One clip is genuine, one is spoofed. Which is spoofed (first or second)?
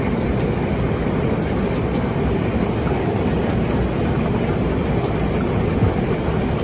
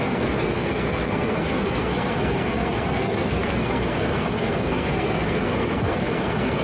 second